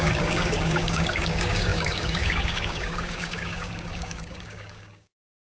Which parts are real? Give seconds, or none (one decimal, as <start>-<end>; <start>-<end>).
none

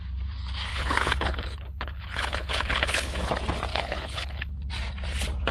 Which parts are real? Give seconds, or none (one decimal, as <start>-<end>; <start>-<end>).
0.0-0.7; 3.3-3.7; 4.5-5.5

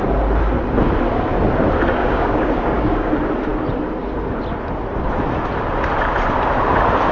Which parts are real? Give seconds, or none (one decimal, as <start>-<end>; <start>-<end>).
0.0-2.0; 3.1-7.1

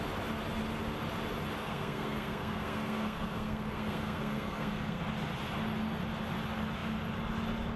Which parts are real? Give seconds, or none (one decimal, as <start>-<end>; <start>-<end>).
0.0-1.6; 5.0-7.8

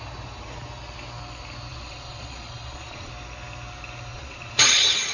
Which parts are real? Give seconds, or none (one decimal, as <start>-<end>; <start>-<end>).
0.0-1.7; 3.1-4.1

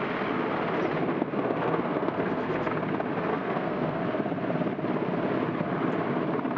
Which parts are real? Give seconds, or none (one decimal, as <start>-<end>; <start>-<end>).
0.0-1.1; 2.7-3.3; 4.0-6.6

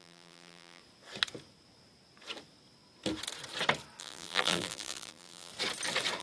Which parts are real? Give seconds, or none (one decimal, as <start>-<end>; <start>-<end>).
0.8-4.0; 5.5-6.2

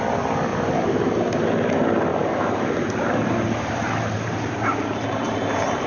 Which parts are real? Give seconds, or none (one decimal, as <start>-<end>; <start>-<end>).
0.0-0.5; 1.3-2.1